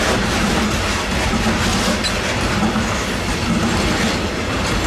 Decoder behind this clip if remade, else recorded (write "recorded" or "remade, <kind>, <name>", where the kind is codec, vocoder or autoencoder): recorded